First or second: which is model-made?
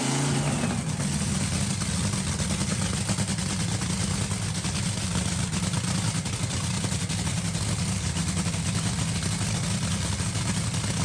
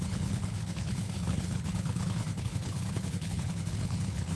second